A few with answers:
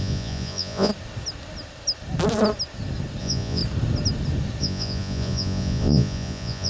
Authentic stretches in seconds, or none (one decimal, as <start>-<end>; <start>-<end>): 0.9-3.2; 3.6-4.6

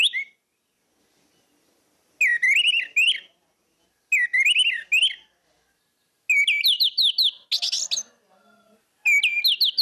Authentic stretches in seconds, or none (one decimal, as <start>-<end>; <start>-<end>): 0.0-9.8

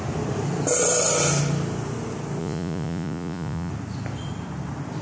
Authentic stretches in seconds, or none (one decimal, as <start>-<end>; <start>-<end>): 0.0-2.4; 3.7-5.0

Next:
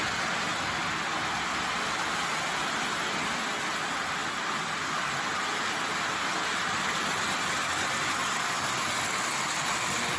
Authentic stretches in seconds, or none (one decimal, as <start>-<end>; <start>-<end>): 0.0-10.2